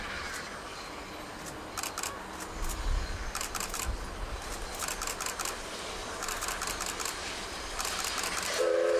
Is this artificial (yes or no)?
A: no